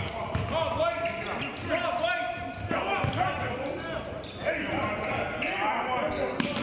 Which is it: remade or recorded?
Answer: recorded